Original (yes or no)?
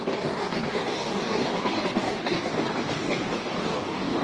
no